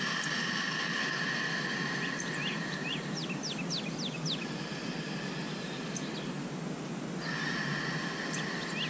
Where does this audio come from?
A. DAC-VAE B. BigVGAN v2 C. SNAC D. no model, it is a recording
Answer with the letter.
D